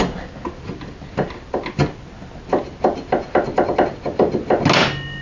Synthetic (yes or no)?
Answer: no